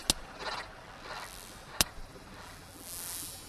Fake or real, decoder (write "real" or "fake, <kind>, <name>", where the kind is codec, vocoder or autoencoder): real